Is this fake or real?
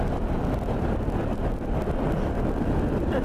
real